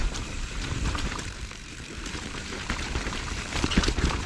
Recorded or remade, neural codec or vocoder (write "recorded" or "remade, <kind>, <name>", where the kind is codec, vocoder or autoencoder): remade, vocoder, BigVGAN v2